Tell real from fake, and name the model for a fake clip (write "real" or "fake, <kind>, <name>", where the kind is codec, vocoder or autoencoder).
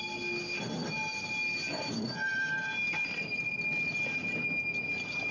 real